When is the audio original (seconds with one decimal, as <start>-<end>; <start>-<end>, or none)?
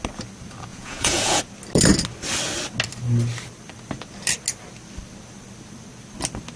0.0-0.7; 1.4-6.6